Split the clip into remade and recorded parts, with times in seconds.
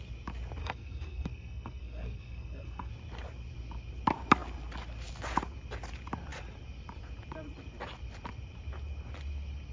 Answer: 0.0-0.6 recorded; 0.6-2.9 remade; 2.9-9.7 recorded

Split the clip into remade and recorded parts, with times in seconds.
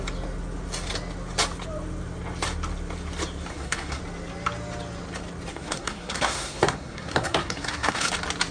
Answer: 0.0-3.5 recorded; 3.5-4.0 remade; 4.0-5.5 recorded; 5.5-8.1 remade; 8.1-8.5 recorded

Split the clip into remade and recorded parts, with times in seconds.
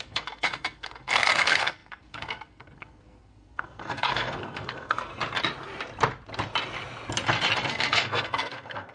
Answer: 0.0-5.1 remade; 5.1-7.7 recorded; 7.7-8.9 remade